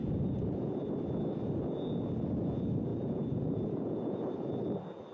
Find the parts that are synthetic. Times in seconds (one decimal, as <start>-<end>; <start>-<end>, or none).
0.0-0.7; 2.9-4.2